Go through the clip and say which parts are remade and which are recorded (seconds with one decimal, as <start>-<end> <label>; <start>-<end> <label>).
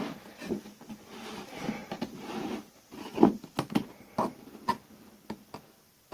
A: 0.0-1.8 recorded; 1.8-4.6 remade; 4.6-6.1 recorded